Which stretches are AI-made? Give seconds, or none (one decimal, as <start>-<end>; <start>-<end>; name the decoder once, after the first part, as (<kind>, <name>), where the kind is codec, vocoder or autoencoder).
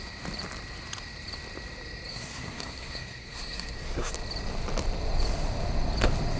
2.1-4.1 (codec, SNAC)